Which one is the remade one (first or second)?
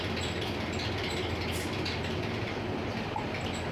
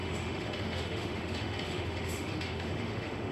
second